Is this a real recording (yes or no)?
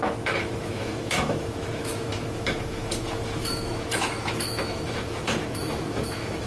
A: no